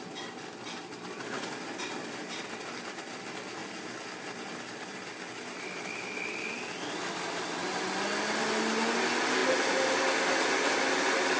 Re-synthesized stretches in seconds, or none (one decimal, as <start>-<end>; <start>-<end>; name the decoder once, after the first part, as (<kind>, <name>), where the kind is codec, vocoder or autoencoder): none